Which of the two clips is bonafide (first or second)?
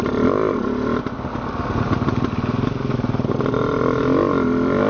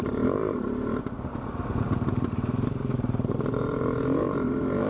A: first